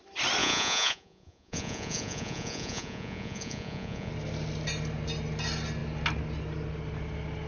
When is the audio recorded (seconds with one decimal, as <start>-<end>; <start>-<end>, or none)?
0.0-0.4; 4.1-7.5